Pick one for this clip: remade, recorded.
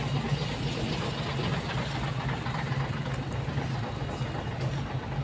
recorded